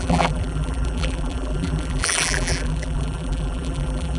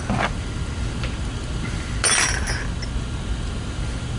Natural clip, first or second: second